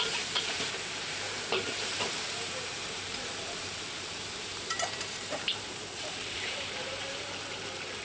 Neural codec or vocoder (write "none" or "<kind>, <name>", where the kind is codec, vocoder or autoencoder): vocoder, BigVGAN v2